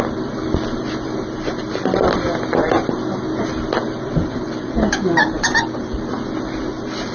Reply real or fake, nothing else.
real